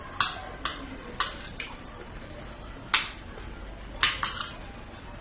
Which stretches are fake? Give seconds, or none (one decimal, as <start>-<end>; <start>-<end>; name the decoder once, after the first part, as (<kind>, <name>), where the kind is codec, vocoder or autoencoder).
0.7-2.4 (vocoder, BigVGAN v2)